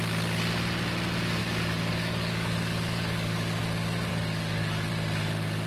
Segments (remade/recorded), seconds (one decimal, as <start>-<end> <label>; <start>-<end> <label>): 0.0-1.4 recorded; 1.4-3.6 remade; 3.6-4.1 recorded; 4.1-4.9 remade; 4.9-5.7 recorded